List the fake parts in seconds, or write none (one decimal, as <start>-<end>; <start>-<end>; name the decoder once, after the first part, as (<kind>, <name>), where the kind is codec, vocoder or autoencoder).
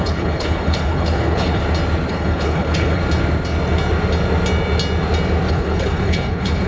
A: 0.0-1.6 (codec, HILCodec); 2.1-3.0; 5.5-6.7